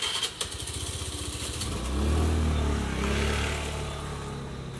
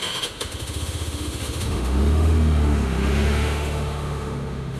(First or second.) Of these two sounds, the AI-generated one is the second